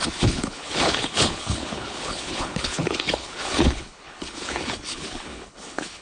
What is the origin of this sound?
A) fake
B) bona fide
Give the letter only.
A